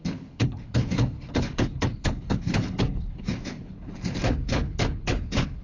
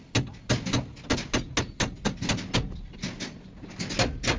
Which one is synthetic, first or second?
first